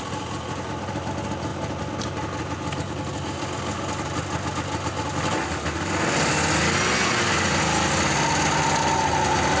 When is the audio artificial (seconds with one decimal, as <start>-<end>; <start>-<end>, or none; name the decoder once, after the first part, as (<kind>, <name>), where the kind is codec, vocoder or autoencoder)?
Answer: none